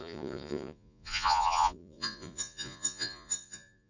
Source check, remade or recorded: remade